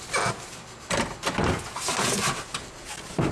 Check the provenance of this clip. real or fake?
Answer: real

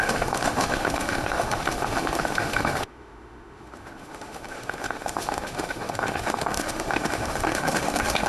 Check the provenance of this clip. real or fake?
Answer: fake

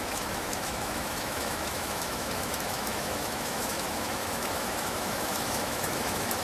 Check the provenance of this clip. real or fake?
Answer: fake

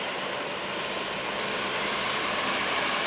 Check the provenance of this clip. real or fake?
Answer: real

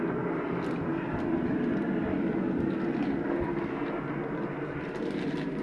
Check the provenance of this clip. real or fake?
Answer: real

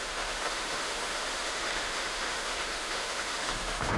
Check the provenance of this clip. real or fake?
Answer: fake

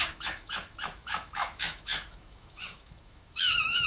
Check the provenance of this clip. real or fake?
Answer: fake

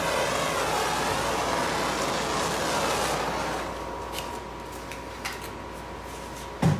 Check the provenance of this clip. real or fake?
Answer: real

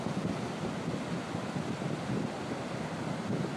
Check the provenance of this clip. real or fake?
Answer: real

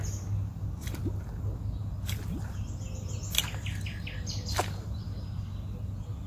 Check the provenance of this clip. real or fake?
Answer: real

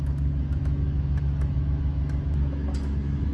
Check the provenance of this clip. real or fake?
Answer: fake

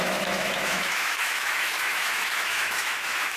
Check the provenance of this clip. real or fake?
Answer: fake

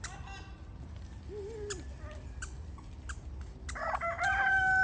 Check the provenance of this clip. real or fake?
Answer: real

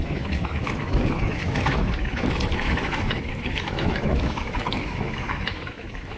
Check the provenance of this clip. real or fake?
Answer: fake